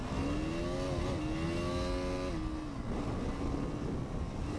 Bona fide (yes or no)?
yes